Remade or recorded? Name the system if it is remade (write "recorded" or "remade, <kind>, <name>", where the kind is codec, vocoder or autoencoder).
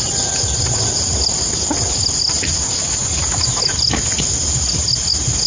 recorded